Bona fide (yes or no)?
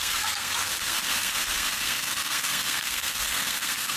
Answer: no